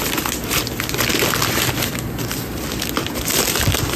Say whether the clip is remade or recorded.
remade